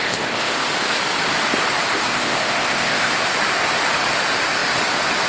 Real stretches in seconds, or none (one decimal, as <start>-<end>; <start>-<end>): 0.7-1.9; 3.1-5.3